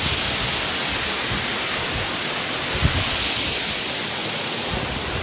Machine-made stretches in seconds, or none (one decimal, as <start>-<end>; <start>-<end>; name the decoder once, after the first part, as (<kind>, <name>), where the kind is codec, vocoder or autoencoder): 4.2-4.8 (vocoder, Vocos)